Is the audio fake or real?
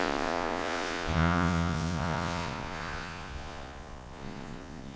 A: fake